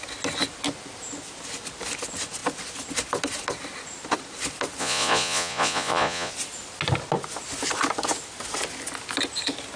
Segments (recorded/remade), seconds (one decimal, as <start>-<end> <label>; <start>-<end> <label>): 0.0-4.8 recorded; 4.8-6.3 remade; 6.3-9.8 recorded